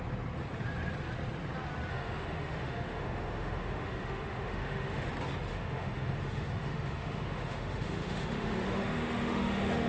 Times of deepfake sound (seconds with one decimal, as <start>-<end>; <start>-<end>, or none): 1.9-5.1; 5.5-9.9